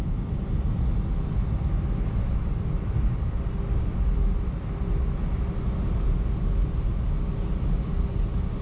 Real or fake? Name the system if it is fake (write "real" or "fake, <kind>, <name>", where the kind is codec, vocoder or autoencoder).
real